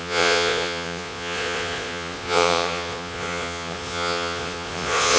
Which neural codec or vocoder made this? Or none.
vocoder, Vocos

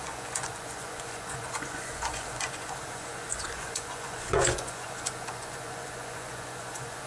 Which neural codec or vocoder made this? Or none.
vocoder, Vocos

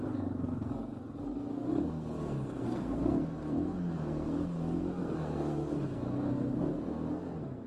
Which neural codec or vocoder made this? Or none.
codec, SNAC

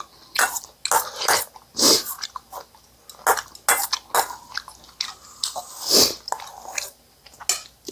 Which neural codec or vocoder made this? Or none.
none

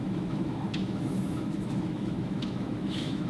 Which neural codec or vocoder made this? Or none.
autoencoder, DAC-VAE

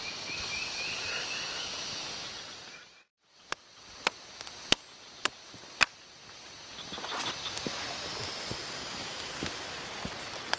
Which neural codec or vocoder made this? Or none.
none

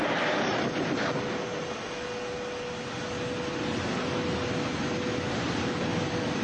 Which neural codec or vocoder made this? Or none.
none